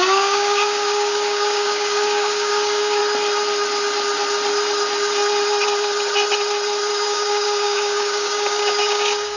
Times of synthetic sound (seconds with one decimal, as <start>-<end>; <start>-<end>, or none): 0.0-3.0; 6.9-9.4